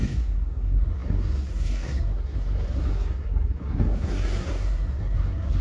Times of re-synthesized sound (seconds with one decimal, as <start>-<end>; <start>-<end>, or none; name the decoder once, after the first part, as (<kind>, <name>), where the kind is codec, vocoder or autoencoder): 0.0-5.6 (codec, SNAC)